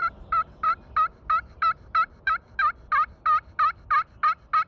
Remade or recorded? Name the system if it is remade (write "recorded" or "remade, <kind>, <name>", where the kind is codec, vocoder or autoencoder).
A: recorded